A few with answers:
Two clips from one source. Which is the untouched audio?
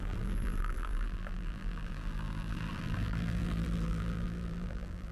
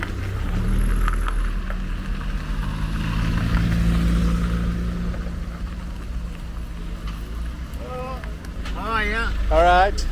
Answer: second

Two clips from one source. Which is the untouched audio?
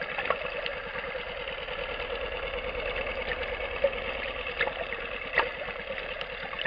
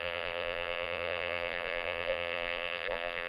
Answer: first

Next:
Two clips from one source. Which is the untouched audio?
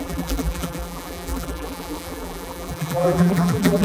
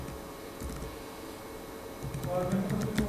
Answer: second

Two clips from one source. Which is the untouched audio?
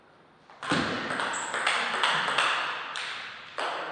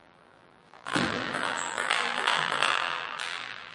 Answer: first